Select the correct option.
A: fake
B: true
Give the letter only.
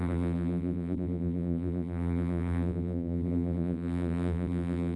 A